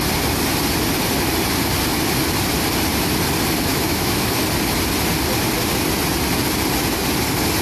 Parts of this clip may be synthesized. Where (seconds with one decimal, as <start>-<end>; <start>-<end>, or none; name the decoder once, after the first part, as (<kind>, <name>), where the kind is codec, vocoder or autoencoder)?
3.7-4.3 (autoencoder, DAC-VAE)